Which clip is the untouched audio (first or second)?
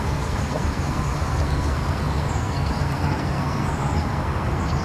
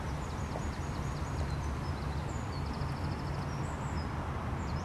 second